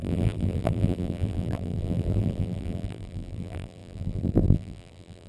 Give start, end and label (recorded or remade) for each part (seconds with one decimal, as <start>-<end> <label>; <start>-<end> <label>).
0.0-5.3 remade